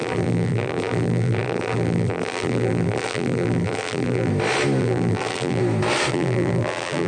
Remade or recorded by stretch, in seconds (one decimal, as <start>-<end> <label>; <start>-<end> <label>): 0.0-4.3 remade; 4.3-4.8 recorded; 4.8-5.6 remade; 5.6-6.1 recorded; 6.1-7.1 remade